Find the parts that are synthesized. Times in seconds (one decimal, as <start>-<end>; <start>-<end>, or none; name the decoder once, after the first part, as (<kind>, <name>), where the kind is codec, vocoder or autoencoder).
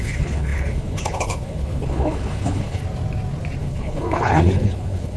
0.0-2.8 (codec, HILCodec); 3.6-5.2